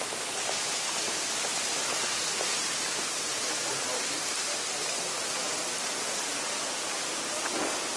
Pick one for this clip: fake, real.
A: real